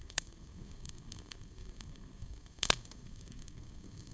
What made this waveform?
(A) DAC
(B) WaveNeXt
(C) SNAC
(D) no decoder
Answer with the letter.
C